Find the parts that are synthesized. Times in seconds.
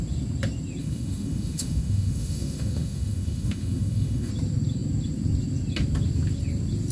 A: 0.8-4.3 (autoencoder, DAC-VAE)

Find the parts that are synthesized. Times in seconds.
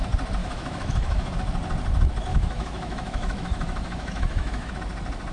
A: 0.4-1.3 (autoencoder, DAC-VAE); 2.3-4.7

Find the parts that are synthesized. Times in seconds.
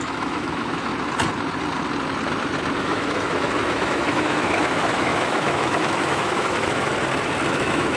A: 0.0-0.9 (autoencoder, DAC-VAE); 2.8-6.9; 7.5-8.0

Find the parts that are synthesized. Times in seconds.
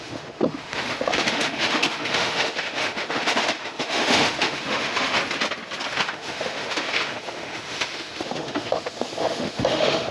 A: 0.0-5.2 (autoencoder, DAC-VAE); 5.9-10.1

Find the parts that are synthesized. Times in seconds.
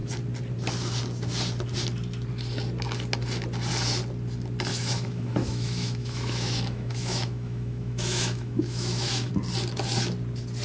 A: 4.7-9.3 (autoencoder, DAC-VAE)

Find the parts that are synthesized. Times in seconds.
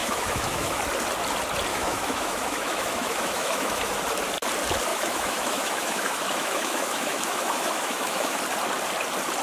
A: 0.0-0.8 (autoencoder, DAC-VAE); 1.7-4.0; 4.9-8.4